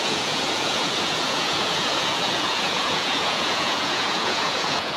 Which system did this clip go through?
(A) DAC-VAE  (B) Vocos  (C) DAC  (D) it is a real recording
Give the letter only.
B